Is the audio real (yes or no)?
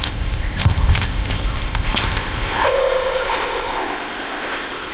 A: no